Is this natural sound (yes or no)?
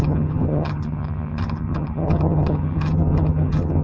no